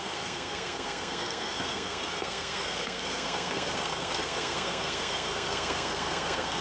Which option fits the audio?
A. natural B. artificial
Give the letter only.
B